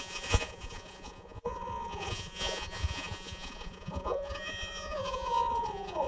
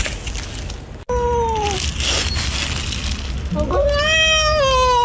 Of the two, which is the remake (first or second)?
first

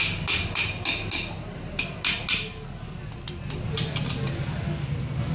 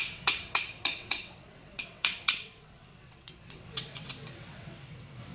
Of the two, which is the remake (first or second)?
second